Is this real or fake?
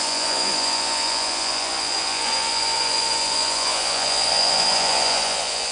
fake